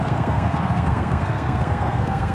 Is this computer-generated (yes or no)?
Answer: yes